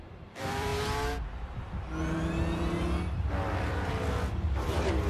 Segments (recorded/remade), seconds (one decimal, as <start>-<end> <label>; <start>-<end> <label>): 0.0-0.7 remade; 0.7-1.6 recorded; 1.6-2.0 remade; 2.0-3.3 recorded; 3.3-5.1 remade